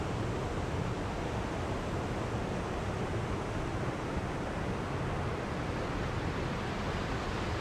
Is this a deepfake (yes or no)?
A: no